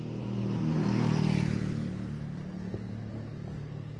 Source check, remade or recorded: recorded